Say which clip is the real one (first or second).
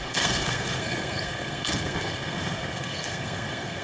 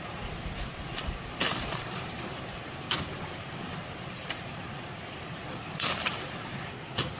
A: second